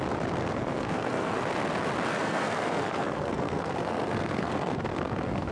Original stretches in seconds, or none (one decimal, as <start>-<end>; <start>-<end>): 0.0-0.4; 1.4-2.1